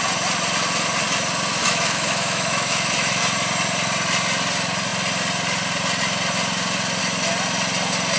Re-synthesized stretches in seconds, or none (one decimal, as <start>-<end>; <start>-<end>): 1.6-3.2